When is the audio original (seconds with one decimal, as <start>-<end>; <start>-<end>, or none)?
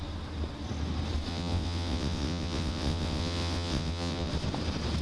0.0-1.3; 4.3-5.0